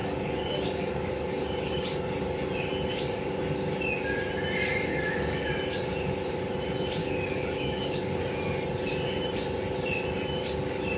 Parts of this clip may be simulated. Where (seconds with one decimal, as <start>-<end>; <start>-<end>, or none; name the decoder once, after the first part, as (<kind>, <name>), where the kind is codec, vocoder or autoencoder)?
0.0-2.2 (codec, DAC); 4.9-5.5; 7.0-8.2